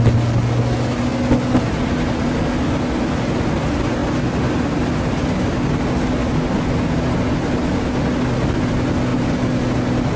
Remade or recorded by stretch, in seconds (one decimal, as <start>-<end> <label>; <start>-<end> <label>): 0.0-10.2 recorded